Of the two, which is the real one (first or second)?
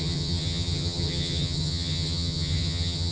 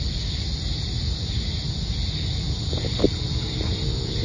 second